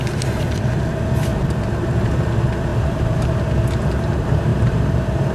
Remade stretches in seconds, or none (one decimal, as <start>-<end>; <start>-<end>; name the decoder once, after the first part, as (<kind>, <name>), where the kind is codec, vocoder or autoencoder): 1.3-2.2 (vocoder, BigVGAN v2); 2.7-3.3; 4.5-5.3